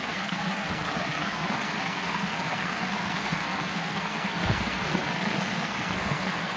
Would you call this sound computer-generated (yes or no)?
yes